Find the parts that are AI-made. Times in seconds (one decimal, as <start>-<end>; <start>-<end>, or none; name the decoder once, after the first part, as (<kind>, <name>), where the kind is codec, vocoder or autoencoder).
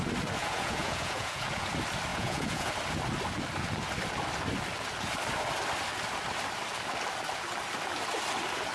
0.4-1.7 (vocoder, Vocos); 2.1-2.7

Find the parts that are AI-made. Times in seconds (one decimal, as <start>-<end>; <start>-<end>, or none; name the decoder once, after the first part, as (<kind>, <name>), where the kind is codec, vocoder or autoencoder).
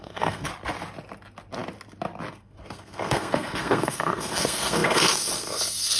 0.0-0.5 (codec, SNAC); 2.3-6.0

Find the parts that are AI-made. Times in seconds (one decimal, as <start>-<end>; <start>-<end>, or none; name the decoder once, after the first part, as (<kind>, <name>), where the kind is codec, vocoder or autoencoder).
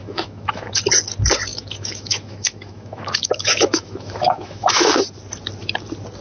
0.0-0.8 (autoencoder, DAC-VAE); 1.5-5.0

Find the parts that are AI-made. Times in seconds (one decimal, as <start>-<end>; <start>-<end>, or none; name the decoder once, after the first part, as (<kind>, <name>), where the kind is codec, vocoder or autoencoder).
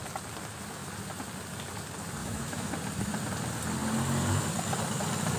2.2-2.7 (autoencoder, DAC-VAE)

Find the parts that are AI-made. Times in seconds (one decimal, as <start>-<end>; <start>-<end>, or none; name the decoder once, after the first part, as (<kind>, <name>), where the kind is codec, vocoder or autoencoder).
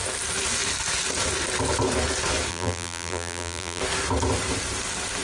2.5-3.8 (vocoder, BigVGAN v2)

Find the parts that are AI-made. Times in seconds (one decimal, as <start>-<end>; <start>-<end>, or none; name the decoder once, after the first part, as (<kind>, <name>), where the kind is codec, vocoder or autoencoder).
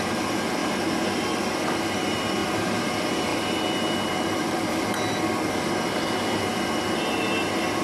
0.0-0.6 (vocoder, BigVGAN v2); 1.6-7.8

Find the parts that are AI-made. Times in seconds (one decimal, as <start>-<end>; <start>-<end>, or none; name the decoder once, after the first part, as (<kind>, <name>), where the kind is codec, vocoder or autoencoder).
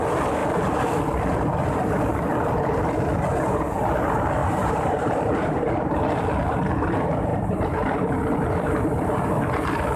4.4-5.7 (vocoder, BigVGAN v2); 7.3-8.1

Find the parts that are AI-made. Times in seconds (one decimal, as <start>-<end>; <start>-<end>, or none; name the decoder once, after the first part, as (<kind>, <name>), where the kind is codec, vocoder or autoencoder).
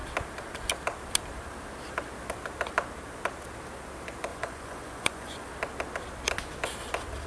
4.3-5.5 (vocoder, Vocos)